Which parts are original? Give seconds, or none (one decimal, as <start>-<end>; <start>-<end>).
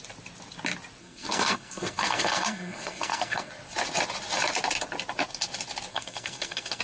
0.0-1.0; 3.5-5.9